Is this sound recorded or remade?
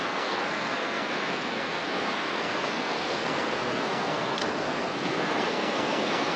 remade